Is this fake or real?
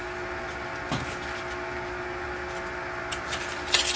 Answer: real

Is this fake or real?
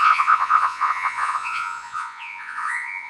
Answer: fake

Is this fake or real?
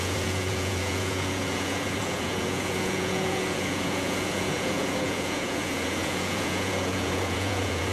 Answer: fake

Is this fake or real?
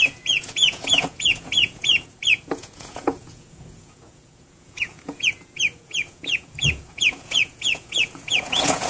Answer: fake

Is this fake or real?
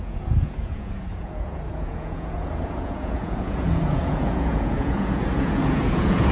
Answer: fake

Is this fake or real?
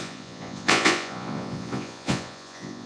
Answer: fake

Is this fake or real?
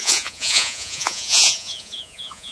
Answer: fake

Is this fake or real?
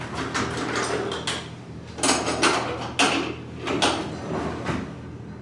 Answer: real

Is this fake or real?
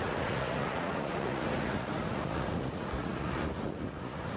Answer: fake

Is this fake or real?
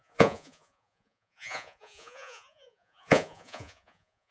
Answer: fake